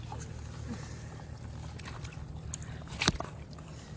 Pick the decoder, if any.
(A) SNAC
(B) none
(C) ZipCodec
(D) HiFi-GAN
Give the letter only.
B